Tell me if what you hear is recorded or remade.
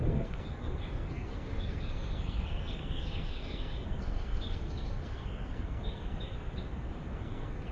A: remade